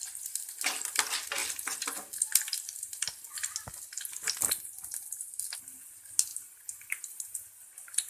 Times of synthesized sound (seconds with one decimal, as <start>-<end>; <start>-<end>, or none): none